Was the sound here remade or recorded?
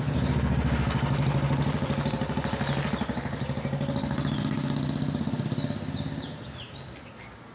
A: recorded